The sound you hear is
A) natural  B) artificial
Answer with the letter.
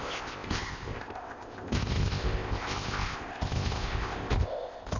B